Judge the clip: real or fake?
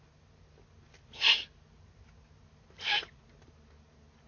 real